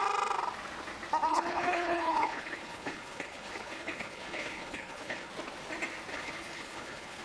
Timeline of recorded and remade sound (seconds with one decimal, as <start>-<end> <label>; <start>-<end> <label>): 0.0-1.3 recorded; 1.3-5.3 remade; 5.3-6.1 recorded; 6.1-7.2 remade